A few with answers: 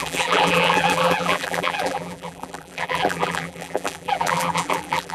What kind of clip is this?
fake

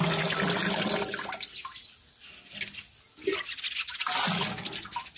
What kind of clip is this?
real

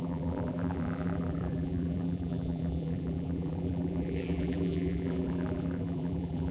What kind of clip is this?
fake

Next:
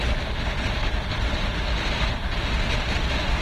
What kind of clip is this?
real